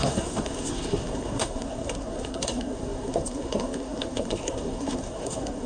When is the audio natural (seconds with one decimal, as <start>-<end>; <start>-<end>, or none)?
none